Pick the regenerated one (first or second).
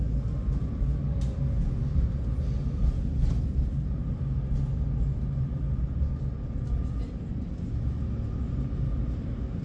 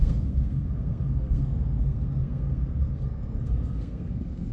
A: second